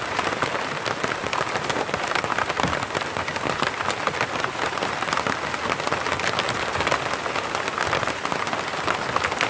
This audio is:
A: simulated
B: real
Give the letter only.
B